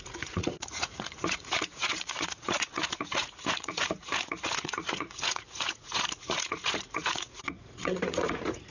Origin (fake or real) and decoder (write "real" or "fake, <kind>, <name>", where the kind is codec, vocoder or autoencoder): fake, vocoder, Vocos